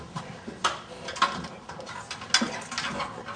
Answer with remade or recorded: recorded